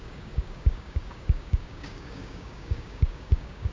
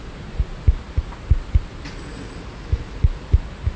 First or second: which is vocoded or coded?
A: first